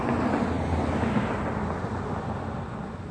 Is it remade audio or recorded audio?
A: remade